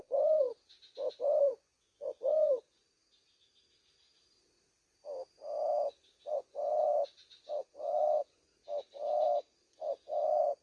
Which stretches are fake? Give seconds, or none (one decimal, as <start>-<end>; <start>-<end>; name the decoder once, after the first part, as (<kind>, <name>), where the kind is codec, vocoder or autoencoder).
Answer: 0.0-0.5 (vocoder, Vocos); 1.4-2.8; 6.3-8.5; 9.6-10.6